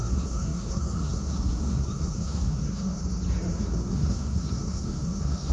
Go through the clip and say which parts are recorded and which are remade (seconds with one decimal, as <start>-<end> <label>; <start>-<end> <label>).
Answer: 0.0-3.0 remade; 3.0-3.5 recorded; 3.5-5.5 remade